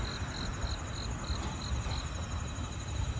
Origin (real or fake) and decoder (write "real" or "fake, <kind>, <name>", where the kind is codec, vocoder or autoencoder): real